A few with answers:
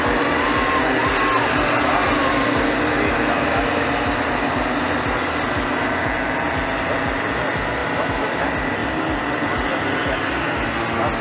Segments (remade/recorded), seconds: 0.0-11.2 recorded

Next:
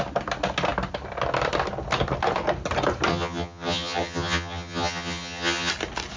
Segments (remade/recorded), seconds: 0.0-3.1 recorded; 3.1-5.7 remade; 5.7-6.2 recorded

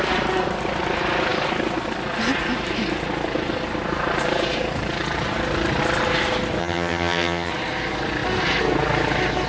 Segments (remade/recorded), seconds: 0.0-6.6 recorded; 6.6-7.5 remade; 7.5-9.5 recorded